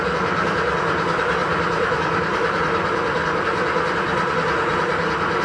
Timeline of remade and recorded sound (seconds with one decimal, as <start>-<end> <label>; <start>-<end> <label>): 0.0-1.4 recorded; 1.4-3.4 remade; 3.4-5.4 recorded